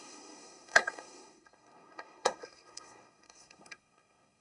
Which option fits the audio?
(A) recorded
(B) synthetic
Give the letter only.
B